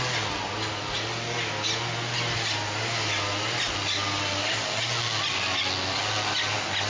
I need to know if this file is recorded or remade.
recorded